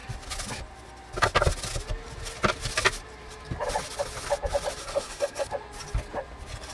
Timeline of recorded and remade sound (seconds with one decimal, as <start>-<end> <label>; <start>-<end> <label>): 0.0-4.8 recorded; 4.8-5.5 remade; 5.5-6.7 recorded